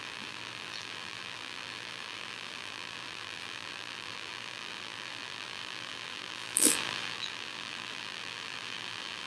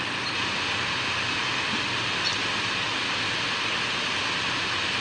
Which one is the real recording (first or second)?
second